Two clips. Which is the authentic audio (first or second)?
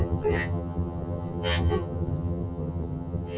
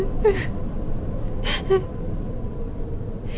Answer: second